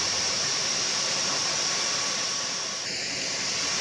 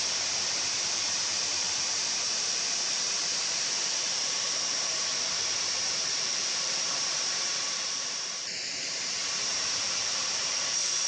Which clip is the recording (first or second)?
first